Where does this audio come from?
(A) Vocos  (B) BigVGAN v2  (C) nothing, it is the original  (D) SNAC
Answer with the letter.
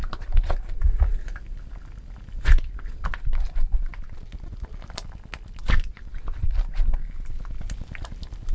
C